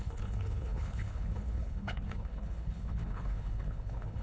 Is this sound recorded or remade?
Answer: remade